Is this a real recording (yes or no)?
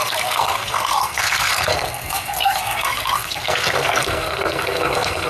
no